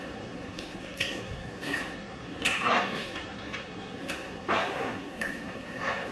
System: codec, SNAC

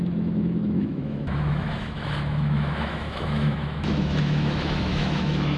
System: autoencoder, DAC-VAE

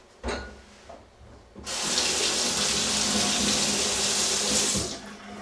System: none